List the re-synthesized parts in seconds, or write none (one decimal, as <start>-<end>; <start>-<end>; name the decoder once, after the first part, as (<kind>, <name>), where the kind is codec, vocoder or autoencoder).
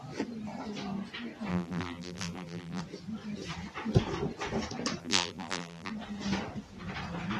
1.5-2.8 (vocoder, BigVGAN v2); 5.0-5.9